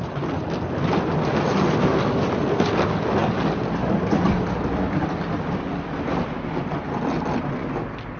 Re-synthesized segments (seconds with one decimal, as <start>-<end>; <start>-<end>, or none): none